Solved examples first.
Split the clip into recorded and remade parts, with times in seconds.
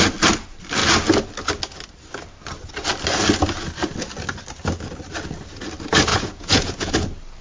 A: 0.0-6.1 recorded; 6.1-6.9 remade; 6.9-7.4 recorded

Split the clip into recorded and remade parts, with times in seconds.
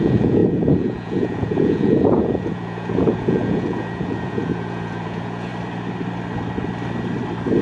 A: 0.0-5.5 remade; 5.5-7.6 recorded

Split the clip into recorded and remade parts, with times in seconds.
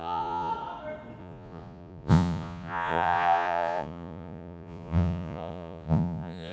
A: 0.0-0.5 remade; 0.5-1.2 recorded; 1.2-6.5 remade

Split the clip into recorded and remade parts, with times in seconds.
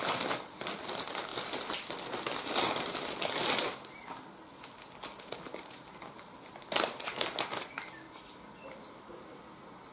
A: 0.0-9.9 recorded